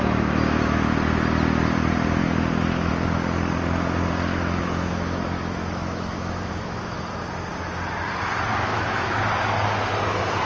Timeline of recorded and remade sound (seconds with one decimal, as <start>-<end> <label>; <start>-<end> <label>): 0.0-2.2 recorded; 2.2-2.9 remade; 2.9-4.3 recorded; 4.3-7.0 remade; 7.0-8.7 recorded; 8.7-9.3 remade; 9.3-10.5 recorded